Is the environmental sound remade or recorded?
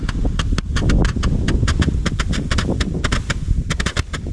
recorded